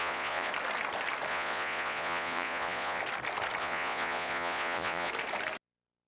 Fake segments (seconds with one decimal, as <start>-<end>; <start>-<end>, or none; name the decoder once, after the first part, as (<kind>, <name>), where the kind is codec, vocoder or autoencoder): 0.0-0.5 (vocoder, Vocos); 1.3-3.0; 3.6-5.1